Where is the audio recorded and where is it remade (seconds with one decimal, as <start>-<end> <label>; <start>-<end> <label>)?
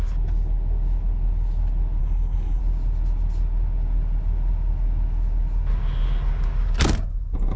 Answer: 0.0-2.0 recorded; 2.0-2.6 remade; 2.6-7.6 recorded